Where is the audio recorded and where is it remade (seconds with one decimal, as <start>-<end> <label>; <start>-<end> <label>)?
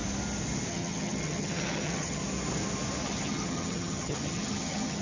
0.0-0.7 recorded; 0.7-2.2 remade; 2.2-3.0 recorded; 3.0-5.0 remade